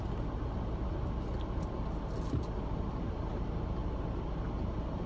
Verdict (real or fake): real